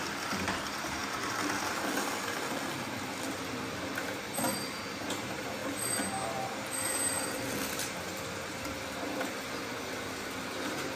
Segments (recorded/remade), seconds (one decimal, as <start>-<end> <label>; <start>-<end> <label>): 0.0-11.0 recorded